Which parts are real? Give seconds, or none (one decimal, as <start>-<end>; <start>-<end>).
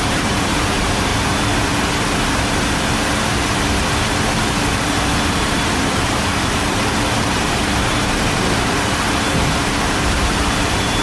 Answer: 1.1-5.4; 6.7-7.2